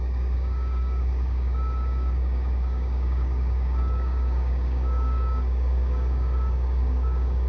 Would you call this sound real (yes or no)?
no